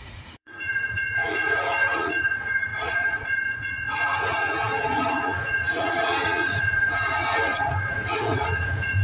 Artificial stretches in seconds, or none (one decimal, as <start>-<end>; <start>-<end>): 0.0-9.0